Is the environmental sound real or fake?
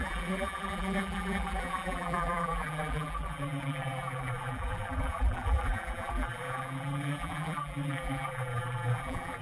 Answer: fake